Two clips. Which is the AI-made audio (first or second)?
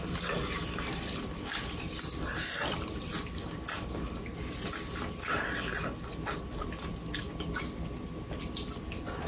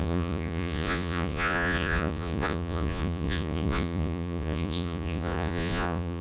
second